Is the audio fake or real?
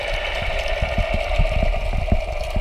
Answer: real